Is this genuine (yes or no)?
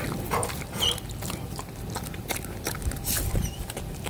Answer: yes